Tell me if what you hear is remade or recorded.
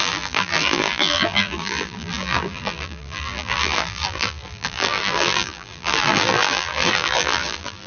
remade